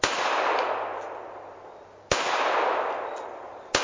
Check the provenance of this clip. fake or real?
real